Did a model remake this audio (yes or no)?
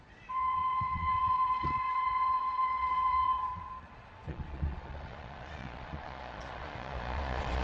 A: yes